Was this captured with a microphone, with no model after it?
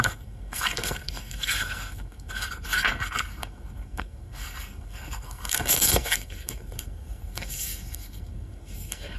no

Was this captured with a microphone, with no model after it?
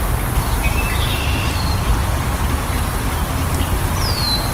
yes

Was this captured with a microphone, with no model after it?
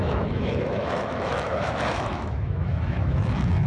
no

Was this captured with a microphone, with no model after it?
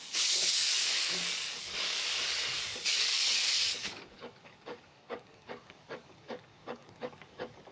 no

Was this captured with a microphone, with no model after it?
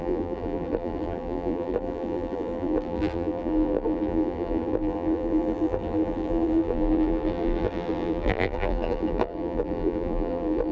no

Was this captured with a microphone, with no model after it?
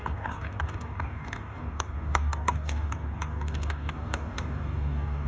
no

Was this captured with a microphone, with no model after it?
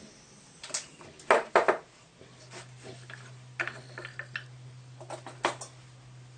yes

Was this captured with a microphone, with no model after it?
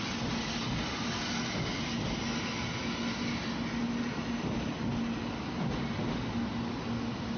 yes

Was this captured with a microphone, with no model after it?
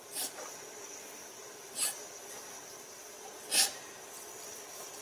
yes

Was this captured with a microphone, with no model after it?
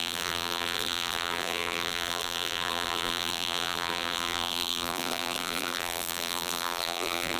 no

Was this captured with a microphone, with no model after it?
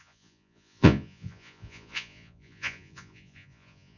no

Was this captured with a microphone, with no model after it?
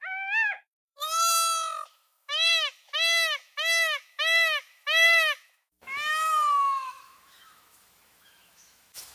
no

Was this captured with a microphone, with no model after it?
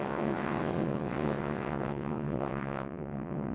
no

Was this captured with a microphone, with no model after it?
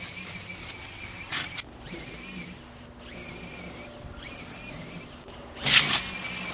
yes